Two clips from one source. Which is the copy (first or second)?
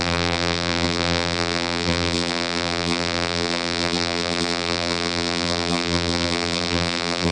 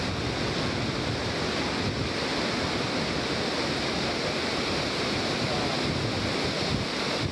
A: first